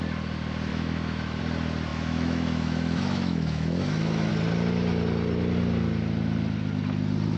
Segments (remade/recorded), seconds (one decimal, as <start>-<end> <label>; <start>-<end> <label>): 0.0-0.7 recorded; 0.7-1.4 remade; 1.4-1.9 recorded; 1.9-4.3 remade; 4.3-7.4 recorded